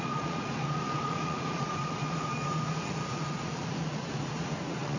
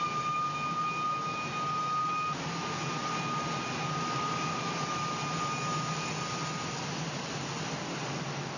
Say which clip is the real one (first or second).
second